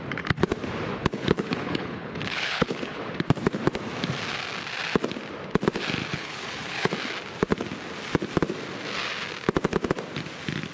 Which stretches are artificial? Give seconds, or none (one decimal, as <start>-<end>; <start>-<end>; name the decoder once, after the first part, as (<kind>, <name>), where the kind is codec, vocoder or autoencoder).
1.0-3.0 (codec, HILCodec); 6.1-6.9